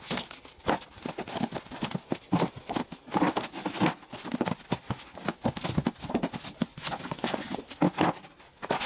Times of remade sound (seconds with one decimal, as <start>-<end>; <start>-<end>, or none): 6.7-7.6